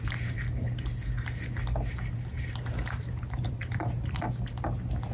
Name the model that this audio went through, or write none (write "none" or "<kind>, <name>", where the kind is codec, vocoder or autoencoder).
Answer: none